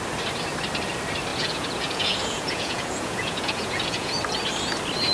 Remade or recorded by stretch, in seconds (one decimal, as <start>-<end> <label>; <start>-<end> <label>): 0.0-1.3 recorded; 1.3-4.2 remade; 4.2-5.1 recorded